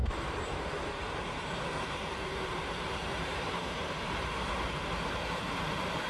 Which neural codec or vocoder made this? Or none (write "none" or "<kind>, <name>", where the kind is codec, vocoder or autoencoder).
vocoder, BigVGAN v2